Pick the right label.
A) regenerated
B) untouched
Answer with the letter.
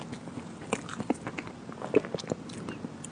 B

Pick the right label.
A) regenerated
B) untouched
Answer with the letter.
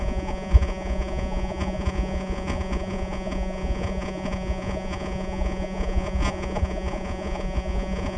A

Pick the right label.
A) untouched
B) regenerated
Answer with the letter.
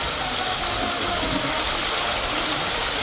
A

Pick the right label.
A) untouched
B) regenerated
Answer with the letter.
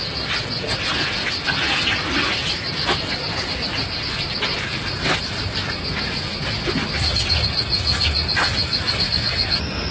A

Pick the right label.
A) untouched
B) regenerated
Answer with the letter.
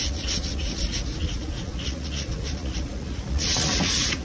B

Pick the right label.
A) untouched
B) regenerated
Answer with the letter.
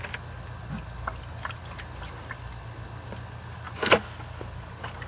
A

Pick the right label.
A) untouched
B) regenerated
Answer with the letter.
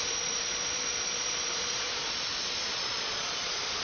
B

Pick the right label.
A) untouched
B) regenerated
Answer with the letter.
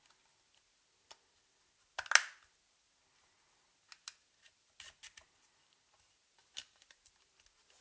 A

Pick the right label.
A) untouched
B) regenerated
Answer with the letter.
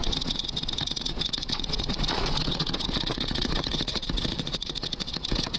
B